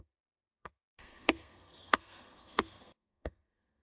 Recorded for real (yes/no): no